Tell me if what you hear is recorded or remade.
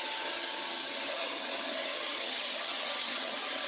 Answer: remade